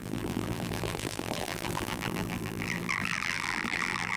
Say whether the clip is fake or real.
fake